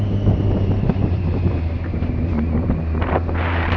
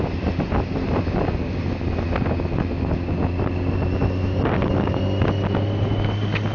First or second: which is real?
second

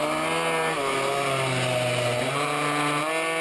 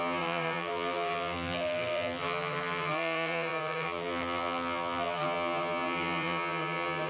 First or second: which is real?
first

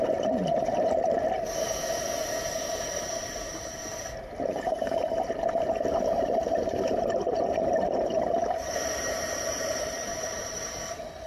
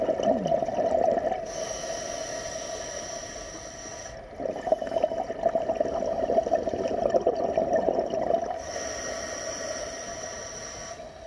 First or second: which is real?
second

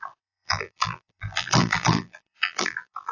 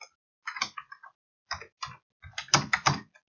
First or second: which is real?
second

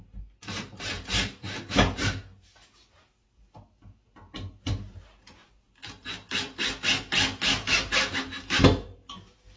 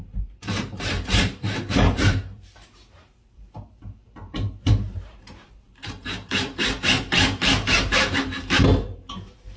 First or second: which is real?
first